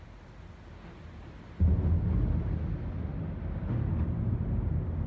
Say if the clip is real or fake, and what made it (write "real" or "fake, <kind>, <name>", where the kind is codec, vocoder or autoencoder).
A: real